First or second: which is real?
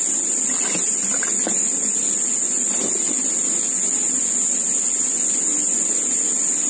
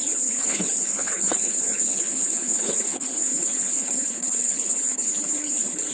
first